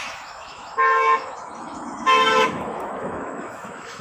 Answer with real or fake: fake